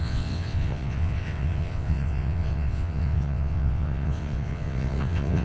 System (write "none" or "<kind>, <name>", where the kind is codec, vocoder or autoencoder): vocoder, WaveNeXt